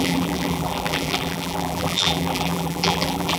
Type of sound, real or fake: fake